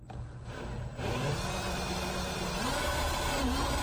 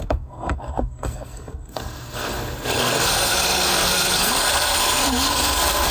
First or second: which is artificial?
second